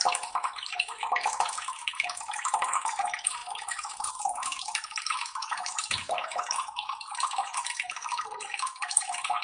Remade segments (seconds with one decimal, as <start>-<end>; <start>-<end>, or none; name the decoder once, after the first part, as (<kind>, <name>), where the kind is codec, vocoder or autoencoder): 0.0-9.4 (autoencoder, DAC-VAE)